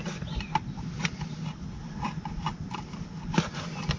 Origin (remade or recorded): recorded